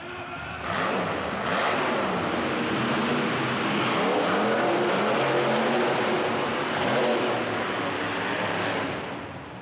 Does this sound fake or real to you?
real